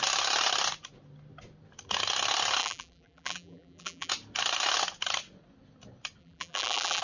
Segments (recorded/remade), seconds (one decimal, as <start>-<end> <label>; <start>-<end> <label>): 0.0-2.6 recorded; 2.6-4.1 remade; 4.1-6.2 recorded; 6.2-7.0 remade